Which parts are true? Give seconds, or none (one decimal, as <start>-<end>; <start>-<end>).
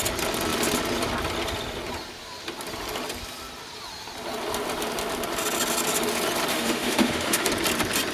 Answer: 0.0-6.5; 7.5-8.1